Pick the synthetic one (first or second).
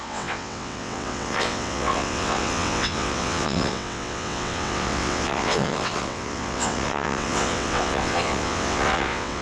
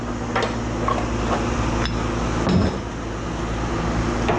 first